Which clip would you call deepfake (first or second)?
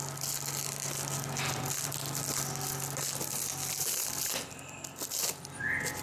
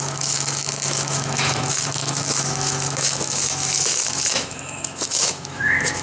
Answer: second